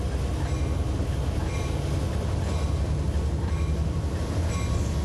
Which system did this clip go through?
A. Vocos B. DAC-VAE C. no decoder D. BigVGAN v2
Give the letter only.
C